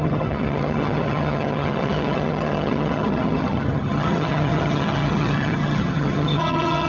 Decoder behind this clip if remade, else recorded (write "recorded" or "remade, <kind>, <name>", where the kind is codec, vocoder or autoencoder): remade, vocoder, HiFi-GAN